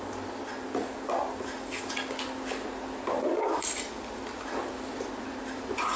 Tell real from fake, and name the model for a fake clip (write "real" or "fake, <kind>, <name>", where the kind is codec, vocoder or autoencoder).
real